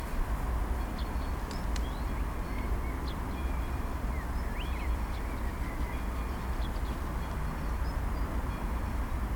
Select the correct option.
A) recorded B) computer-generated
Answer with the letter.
A